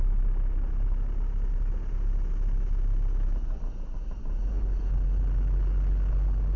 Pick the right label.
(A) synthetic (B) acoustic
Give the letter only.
B